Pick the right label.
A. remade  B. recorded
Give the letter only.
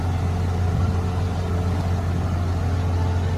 B